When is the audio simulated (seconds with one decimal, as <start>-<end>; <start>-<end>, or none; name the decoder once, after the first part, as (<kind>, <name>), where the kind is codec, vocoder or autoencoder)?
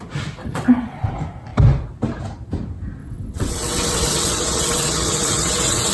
0.4-1.1 (vocoder, WaveNeXt); 3.0-5.9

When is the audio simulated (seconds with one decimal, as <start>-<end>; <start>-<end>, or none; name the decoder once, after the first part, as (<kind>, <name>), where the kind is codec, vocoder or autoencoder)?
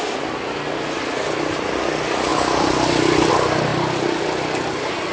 none